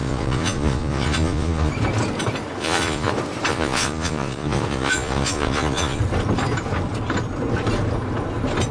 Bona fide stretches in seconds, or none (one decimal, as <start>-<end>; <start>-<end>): 1.7-2.6; 3.1-3.5; 6.0-8.7